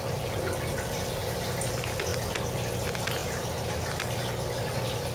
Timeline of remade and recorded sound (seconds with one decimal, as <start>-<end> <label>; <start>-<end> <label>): 0.0-1.2 recorded; 1.2-1.7 remade; 1.7-3.2 recorded; 3.2-3.8 remade; 3.8-5.1 recorded